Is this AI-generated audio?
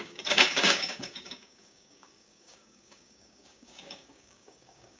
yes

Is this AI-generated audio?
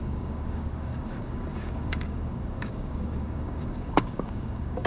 yes